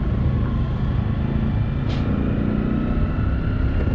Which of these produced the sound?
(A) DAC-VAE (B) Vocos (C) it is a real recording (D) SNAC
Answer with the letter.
C